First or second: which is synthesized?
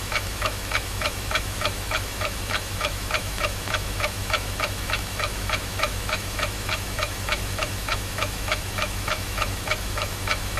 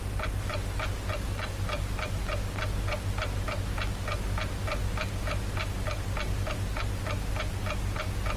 first